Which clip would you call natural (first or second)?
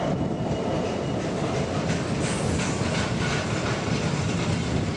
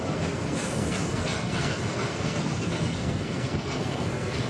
first